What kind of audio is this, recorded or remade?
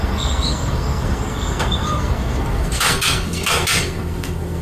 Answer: remade